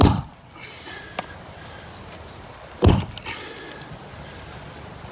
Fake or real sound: real